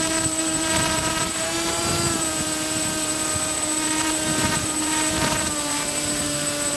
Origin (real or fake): fake